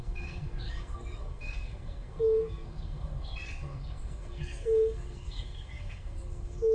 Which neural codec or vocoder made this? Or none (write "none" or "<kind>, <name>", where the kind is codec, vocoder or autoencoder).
codec, SNAC